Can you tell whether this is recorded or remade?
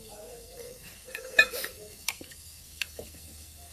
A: remade